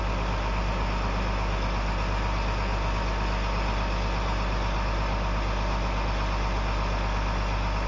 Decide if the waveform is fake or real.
real